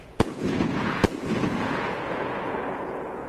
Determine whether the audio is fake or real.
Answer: fake